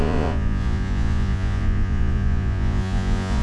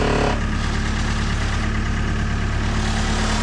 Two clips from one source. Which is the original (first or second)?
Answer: second